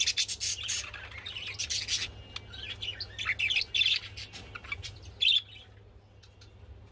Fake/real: real